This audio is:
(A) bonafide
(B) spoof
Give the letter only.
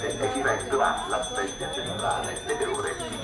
A